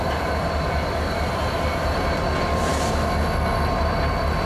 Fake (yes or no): no